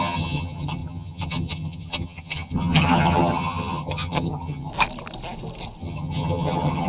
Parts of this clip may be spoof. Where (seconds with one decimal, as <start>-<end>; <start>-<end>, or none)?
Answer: 0.0-4.7; 5.8-6.9